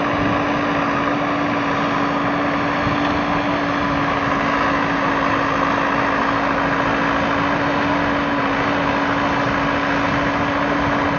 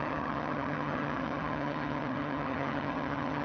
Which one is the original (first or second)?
first